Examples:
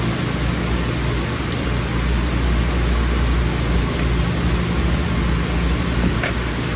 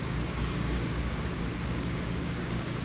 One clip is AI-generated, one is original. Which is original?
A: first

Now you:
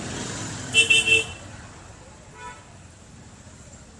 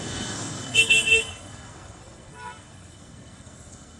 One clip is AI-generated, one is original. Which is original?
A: first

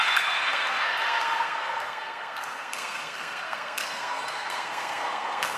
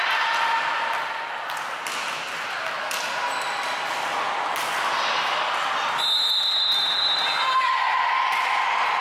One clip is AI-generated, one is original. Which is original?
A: second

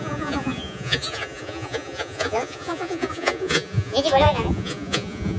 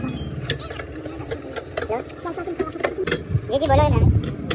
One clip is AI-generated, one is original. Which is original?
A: second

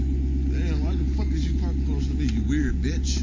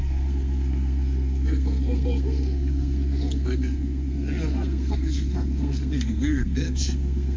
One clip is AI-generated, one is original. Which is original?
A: first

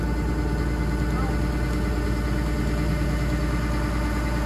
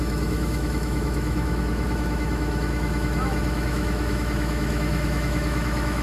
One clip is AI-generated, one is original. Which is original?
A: first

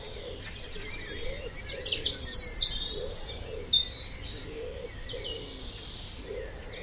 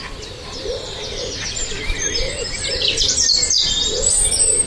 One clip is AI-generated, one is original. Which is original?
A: first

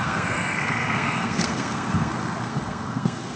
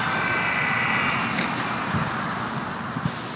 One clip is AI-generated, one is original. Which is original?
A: second